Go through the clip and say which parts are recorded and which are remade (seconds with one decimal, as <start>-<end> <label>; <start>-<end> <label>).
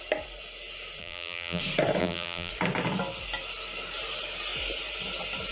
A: 0.0-1.0 recorded; 1.0-1.6 remade; 1.6-2.0 recorded; 2.0-2.5 remade; 2.5-5.5 recorded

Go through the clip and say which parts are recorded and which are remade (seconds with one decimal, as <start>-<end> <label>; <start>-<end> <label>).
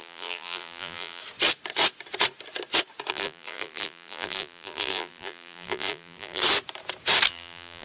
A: 0.0-1.2 remade; 1.2-3.1 recorded; 3.1-6.4 remade; 6.4-7.3 recorded; 7.3-7.8 remade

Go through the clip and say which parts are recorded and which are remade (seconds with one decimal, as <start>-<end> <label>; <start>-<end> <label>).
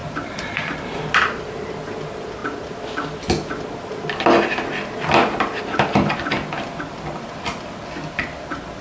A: 0.0-1.7 remade; 1.7-8.8 recorded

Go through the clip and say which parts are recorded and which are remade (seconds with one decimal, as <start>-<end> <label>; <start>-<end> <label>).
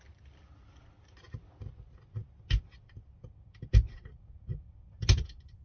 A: 0.0-5.6 recorded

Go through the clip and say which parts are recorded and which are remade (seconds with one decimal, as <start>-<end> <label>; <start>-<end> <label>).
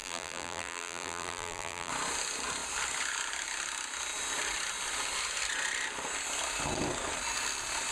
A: 0.0-1.9 remade; 1.9-7.9 recorded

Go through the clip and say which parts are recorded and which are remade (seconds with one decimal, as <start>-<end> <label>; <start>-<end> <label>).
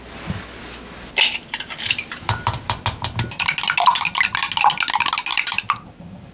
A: 0.0-0.6 recorded; 0.6-2.8 remade; 2.8-5.3 recorded; 5.3-6.3 remade